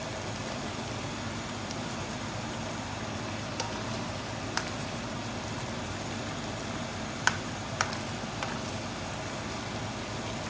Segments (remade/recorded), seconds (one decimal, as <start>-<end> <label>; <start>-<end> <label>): 0.0-10.5 recorded

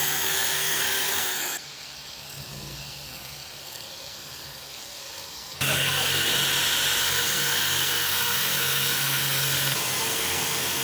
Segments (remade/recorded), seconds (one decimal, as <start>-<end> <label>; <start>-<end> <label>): 0.0-6.3 remade; 6.3-7.0 recorded; 7.0-10.8 remade

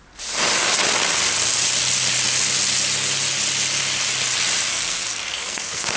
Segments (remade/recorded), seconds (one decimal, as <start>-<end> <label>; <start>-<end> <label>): 0.0-4.7 recorded; 4.7-6.0 remade